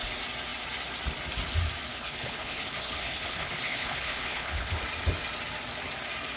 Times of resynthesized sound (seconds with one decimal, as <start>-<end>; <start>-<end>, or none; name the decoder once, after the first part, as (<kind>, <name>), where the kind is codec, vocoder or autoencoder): 1.9-4.8 (codec, HILCodec)